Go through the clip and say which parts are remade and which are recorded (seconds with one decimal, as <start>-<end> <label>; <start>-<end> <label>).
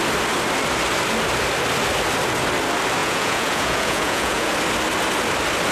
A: 0.0-3.0 recorded; 3.0-4.5 remade; 4.5-5.7 recorded